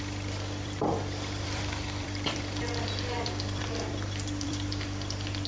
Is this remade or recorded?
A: remade